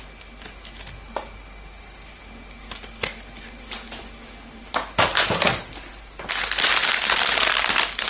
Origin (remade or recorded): recorded